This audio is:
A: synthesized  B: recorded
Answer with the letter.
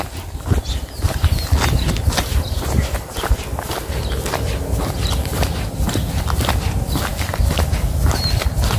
B